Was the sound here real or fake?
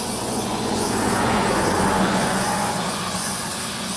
fake